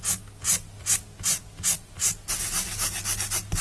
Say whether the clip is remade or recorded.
recorded